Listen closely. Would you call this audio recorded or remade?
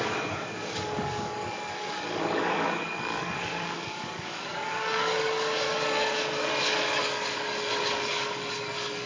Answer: remade